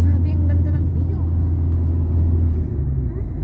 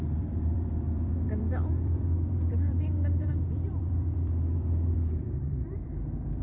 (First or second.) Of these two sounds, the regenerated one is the second